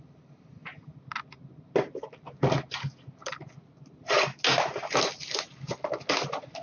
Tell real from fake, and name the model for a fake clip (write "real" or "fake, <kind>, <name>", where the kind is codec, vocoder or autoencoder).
real